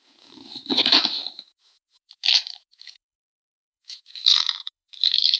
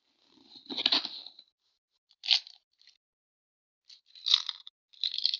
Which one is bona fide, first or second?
second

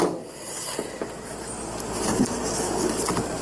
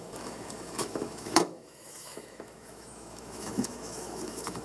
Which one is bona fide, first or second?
first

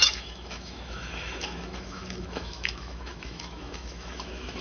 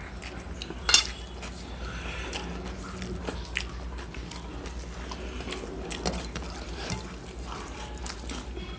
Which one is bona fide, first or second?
second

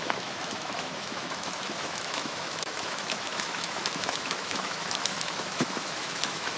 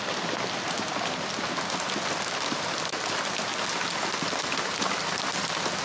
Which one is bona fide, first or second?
second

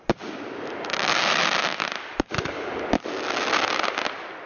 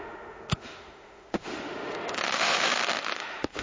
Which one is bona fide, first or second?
first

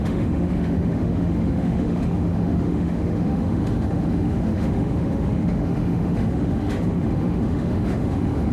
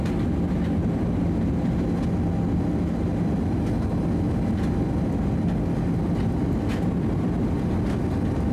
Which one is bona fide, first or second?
second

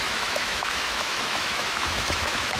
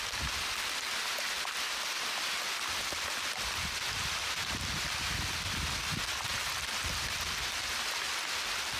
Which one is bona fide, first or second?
second